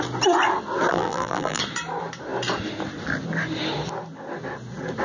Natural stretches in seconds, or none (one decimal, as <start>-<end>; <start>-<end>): 0.0-0.9; 1.6-5.0